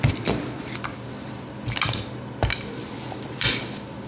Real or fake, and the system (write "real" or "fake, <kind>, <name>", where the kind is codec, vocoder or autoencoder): fake, vocoder, BigVGAN v2